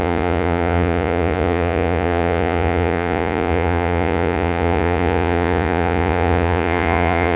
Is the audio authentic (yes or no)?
no